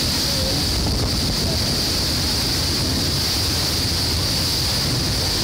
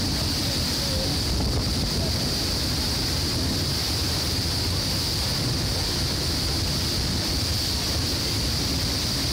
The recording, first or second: first